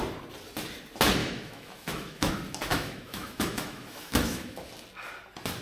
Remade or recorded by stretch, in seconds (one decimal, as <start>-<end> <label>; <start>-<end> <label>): 0.0-1.2 recorded; 1.2-2.3 remade; 2.3-2.7 recorded; 2.7-4.7 remade; 4.7-5.6 recorded